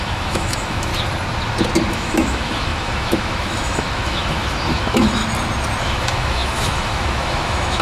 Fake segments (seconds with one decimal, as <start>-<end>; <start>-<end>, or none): 0.0-0.9; 1.9-5.2; 5.8-7.8